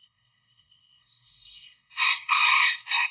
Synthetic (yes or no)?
yes